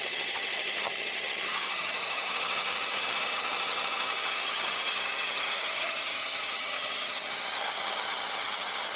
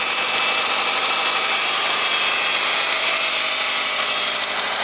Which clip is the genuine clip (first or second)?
second